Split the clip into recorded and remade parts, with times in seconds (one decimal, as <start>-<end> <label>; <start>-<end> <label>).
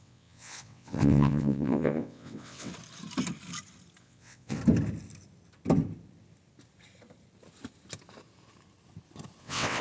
0.0-2.7 remade; 2.7-4.0 recorded; 4.0-4.6 remade; 4.6-9.4 recorded; 9.4-9.8 remade